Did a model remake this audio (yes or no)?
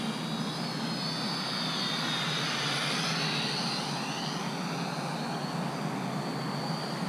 no